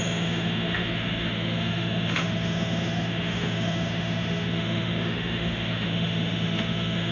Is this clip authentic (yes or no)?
no